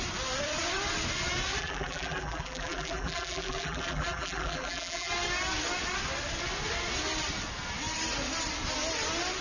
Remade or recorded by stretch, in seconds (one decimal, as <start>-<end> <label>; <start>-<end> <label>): 0.0-1.6 recorded; 1.6-5.1 remade; 5.1-9.4 recorded